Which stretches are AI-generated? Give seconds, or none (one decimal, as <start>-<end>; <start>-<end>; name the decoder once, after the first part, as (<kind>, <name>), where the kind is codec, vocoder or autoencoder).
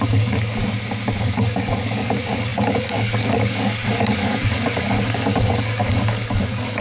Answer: 0.0-0.6 (codec, DAC); 1.2-6.8